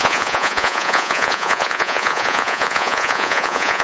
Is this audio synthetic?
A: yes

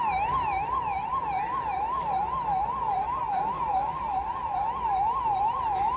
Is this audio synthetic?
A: yes